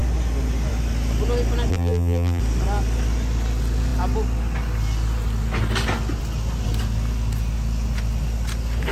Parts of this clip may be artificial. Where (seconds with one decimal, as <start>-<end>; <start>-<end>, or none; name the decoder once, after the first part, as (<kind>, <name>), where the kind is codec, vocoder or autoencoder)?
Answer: 1.7-2.4 (vocoder, BigVGAN v2)

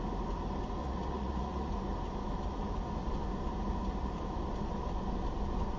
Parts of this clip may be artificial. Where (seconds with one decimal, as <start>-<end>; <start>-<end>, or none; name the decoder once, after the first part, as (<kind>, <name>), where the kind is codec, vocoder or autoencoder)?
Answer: 0.8-1.7 (vocoder, Vocos)